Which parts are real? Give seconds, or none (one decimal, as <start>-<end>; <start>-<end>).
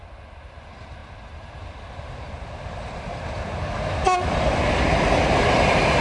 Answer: 0.0-6.0